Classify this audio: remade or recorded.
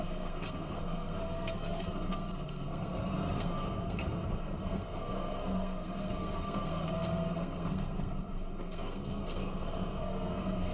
remade